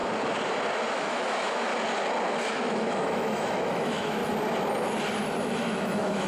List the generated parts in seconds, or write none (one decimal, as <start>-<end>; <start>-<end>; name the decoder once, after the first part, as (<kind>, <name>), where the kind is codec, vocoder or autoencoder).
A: 0.9-1.7 (autoencoder, DAC-VAE); 2.5-4.2; 5.4-6.3